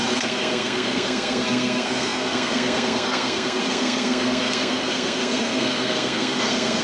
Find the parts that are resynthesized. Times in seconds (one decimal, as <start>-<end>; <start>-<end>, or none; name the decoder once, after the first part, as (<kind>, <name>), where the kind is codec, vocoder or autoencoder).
0.0-6.8 (codec, SNAC)